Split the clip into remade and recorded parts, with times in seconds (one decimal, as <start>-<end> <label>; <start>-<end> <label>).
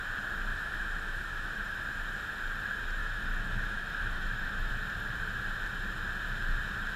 0.0-0.5 recorded; 0.5-1.8 remade; 1.8-3.0 recorded; 3.0-4.7 remade; 4.7-7.0 recorded